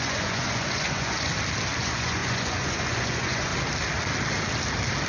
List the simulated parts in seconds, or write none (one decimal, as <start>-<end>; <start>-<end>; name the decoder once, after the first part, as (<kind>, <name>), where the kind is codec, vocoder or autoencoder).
0.0-1.3 (vocoder, Vocos); 1.8-3.5